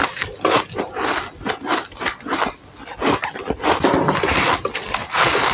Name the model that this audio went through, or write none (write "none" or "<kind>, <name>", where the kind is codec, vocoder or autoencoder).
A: none